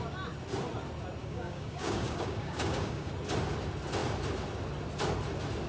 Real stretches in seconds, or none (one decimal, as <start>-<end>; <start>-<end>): 0.0-1.2; 3.1-5.7